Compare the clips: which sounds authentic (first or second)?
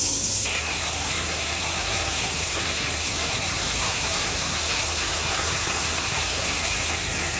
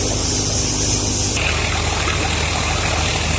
second